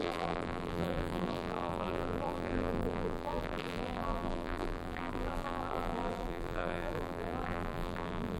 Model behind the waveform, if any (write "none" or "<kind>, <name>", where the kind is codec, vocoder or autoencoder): vocoder, BigVGAN v2